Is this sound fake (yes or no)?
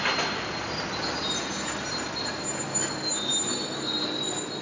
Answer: no